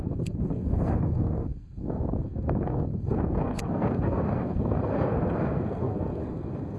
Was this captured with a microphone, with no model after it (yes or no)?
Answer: no